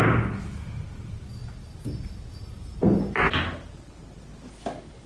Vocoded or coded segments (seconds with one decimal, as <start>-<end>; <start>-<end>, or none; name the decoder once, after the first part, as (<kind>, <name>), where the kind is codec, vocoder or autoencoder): none